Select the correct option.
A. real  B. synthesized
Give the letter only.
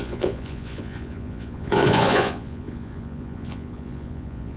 B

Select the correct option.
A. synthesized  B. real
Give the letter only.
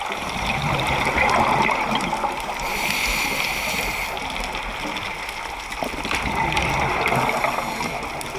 B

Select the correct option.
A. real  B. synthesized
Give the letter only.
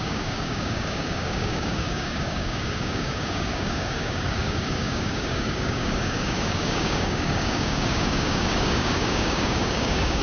B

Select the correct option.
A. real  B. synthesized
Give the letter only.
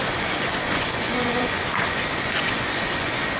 B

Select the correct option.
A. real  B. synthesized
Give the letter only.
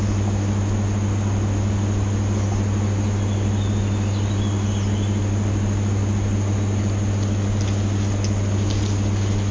A